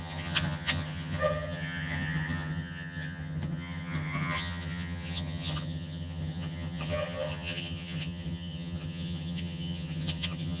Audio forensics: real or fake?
fake